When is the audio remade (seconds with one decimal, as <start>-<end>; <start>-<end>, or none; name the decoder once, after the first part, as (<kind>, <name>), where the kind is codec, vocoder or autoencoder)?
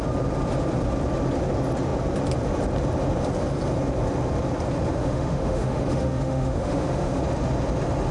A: 5.0-7.2 (autoencoder, DAC-VAE)